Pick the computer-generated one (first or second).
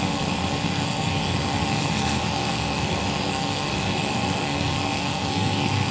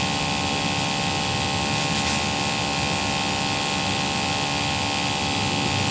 first